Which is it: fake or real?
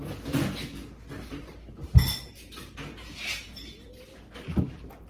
real